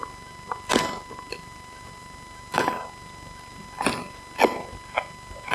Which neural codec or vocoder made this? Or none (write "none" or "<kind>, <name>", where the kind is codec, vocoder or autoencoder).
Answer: none